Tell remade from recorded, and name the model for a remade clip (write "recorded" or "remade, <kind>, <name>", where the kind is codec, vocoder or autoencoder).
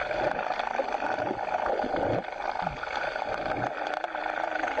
recorded